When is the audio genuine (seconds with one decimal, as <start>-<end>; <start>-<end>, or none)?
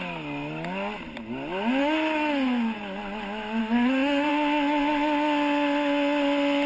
0.0-1.8; 2.8-3.6; 4.3-6.7